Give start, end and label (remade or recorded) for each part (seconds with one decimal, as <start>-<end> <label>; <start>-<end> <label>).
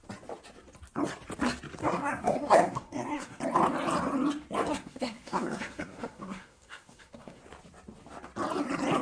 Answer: 0.0-1.8 recorded; 1.8-3.4 remade; 3.4-4.7 recorded; 4.7-7.4 remade; 7.4-9.0 recorded